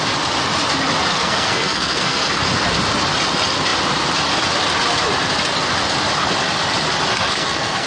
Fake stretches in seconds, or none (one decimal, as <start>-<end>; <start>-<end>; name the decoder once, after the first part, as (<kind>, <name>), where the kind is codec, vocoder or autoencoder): 1.1-2.4 (codec, SNAC); 7.1-7.9